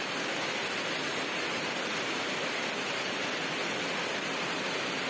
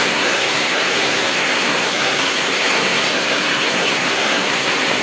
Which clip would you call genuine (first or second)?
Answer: first